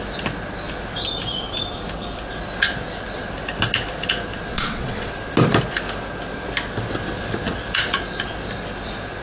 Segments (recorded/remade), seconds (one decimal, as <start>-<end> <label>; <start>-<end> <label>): 0.0-4.5 recorded; 4.5-5.1 remade; 5.1-9.2 recorded